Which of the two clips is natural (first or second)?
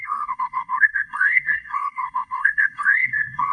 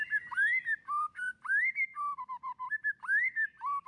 second